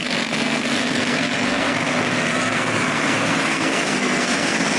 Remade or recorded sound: remade